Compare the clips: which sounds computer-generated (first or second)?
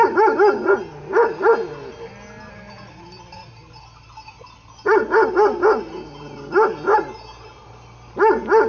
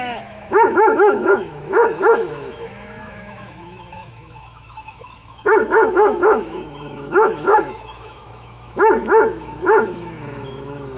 second